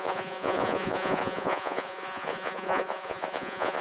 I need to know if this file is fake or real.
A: fake